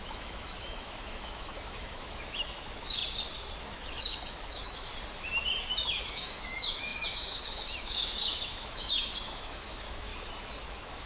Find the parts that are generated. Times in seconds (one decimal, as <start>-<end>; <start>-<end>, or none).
0.0-3.0; 3.6-4.9; 5.7-10.1; 10.6-11.1